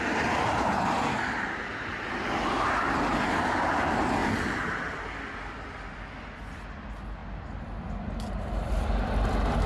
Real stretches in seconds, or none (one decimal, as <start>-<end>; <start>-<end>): 0.0-9.7